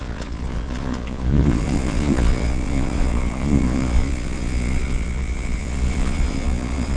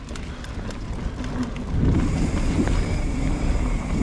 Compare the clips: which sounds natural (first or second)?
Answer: second